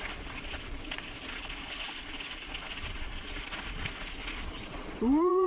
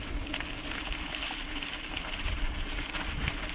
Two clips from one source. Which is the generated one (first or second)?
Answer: first